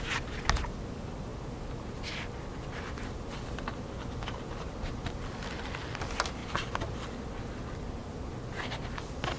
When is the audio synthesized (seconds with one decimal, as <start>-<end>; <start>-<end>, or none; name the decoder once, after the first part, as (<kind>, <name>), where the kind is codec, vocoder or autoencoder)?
none